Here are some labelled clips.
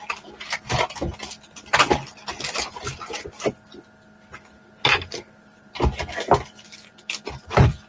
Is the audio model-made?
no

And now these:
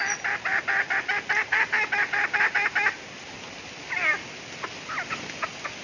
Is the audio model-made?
no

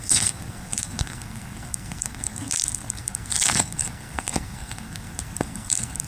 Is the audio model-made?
yes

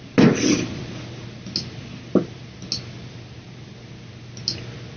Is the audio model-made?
no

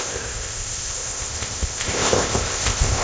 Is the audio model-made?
yes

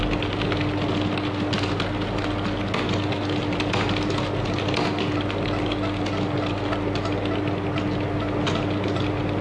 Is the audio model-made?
no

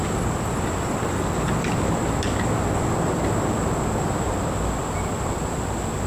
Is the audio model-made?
no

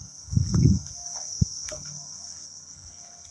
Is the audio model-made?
yes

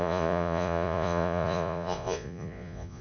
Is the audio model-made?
yes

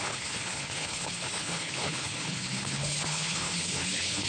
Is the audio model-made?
yes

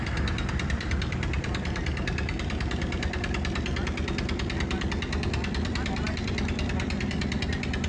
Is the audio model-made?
no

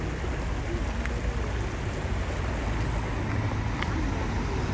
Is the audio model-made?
no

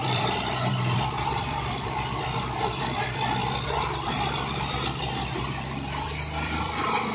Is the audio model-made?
yes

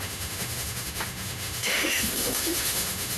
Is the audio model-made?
yes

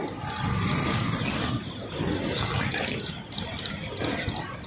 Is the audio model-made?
no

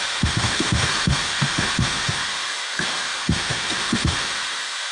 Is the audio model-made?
yes